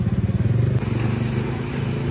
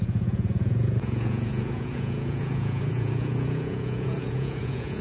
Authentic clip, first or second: first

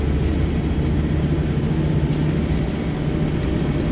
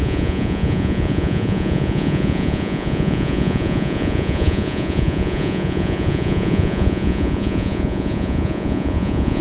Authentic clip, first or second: first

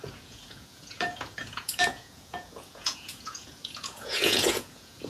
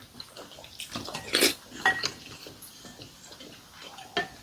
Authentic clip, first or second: second